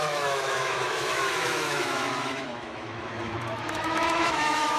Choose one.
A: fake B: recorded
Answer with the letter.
A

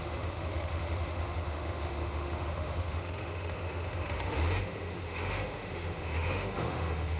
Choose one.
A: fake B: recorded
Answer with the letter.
A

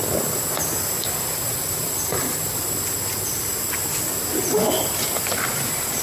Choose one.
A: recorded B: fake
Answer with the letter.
A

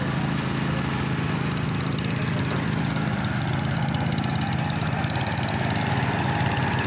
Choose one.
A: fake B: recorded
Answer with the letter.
B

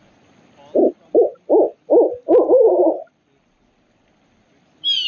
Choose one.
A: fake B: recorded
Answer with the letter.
B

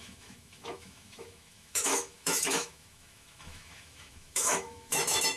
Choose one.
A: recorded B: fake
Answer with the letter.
B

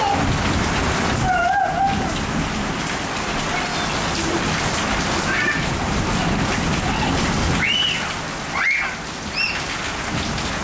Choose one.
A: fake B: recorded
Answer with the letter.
B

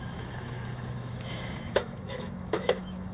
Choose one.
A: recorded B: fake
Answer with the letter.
B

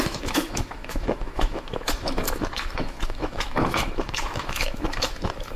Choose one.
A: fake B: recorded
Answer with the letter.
A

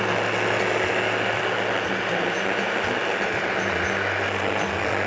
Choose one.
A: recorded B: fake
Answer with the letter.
A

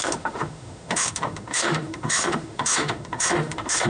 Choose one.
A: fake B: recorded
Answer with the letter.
A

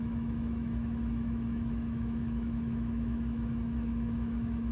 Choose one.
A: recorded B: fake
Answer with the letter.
B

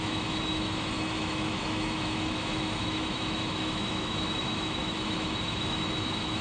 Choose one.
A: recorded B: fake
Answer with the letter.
B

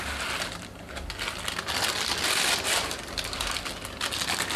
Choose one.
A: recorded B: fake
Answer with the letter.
A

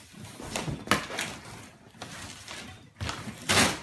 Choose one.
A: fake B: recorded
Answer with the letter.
B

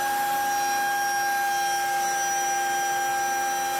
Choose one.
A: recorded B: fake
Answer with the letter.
A